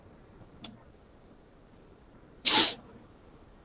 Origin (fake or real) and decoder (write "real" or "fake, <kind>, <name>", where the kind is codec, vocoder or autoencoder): fake, vocoder, BigVGAN v2